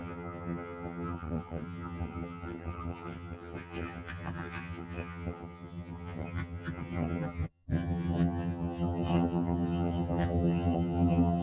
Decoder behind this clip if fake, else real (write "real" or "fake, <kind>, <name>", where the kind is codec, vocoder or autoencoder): fake, vocoder, HiFi-GAN